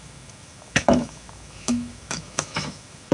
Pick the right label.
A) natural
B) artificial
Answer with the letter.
B